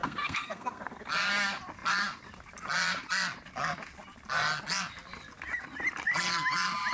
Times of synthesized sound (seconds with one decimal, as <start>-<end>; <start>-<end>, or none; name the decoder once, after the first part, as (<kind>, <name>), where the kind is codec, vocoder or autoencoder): 0.0-1.0 (codec, SNAC)